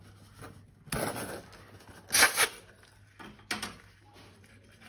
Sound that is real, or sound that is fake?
real